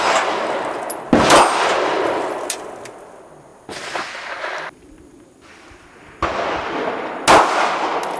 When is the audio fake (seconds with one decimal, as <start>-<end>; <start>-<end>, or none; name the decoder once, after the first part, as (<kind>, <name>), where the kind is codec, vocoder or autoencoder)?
none